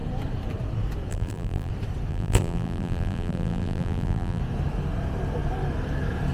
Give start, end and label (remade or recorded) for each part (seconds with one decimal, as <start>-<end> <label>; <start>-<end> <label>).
0.0-1.1 recorded; 1.1-1.7 remade; 1.7-2.1 recorded; 2.1-4.4 remade; 4.4-6.3 recorded